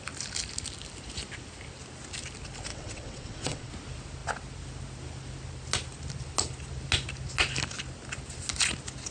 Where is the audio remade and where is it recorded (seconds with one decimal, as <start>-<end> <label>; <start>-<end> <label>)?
0.0-2.7 recorded; 2.7-3.7 remade; 3.7-9.1 recorded